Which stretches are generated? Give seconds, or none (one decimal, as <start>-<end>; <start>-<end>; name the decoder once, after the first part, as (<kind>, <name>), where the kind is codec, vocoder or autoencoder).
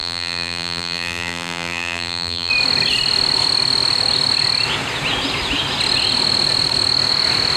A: 0.0-2.5 (vocoder, BigVGAN v2)